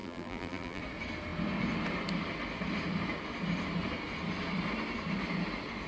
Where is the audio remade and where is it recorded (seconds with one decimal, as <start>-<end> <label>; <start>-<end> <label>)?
0.0-0.8 remade; 0.8-5.9 recorded